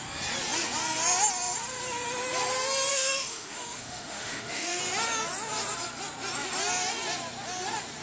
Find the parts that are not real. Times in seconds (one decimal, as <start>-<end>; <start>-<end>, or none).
2.9-4.8